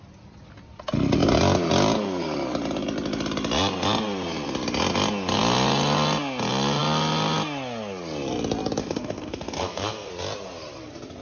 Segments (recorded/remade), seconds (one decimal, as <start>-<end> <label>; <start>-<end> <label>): 0.0-8.8 recorded; 8.8-10.1 remade; 10.1-11.2 recorded